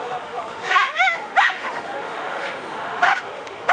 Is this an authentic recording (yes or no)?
no